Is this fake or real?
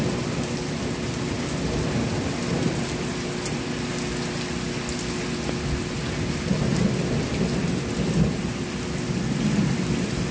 real